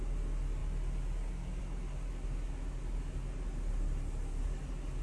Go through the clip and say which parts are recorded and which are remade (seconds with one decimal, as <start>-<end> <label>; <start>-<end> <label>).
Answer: 0.0-5.0 recorded